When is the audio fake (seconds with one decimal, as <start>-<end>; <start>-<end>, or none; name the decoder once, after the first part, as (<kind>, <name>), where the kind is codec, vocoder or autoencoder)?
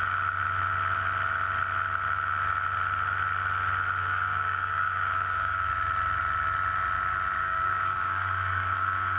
4.0-5.7 (codec, DAC); 7.4-9.2